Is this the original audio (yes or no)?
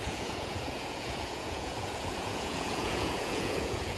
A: no